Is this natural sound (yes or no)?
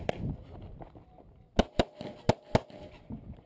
yes